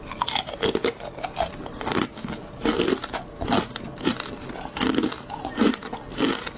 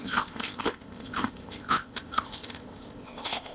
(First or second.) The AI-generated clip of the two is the second